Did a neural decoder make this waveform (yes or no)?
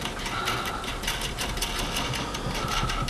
no